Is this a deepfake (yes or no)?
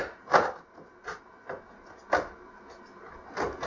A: no